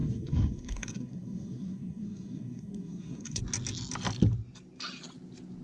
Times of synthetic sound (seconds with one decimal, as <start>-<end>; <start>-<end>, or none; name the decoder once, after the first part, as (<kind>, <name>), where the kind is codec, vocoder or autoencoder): 0.0-3.4 (codec, SNAC)